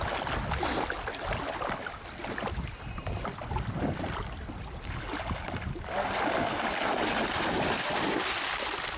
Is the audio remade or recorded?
recorded